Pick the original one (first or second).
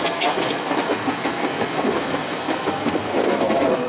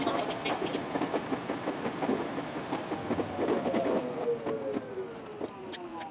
second